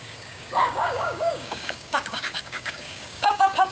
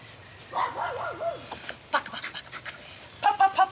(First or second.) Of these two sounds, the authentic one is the second